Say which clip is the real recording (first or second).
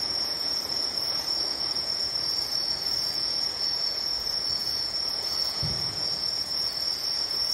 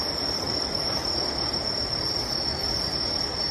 second